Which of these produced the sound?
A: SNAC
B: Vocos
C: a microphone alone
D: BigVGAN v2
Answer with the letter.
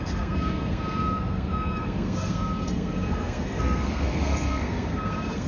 A